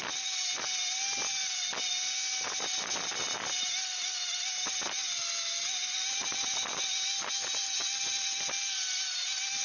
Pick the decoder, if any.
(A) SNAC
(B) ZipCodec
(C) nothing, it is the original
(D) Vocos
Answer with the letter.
C